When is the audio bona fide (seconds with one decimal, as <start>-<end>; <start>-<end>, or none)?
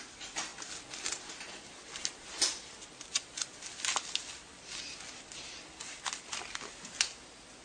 0.0-7.6